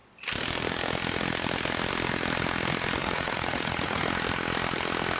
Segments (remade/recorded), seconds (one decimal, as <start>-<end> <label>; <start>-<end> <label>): 0.0-3.0 recorded; 3.0-4.0 remade; 4.0-5.2 recorded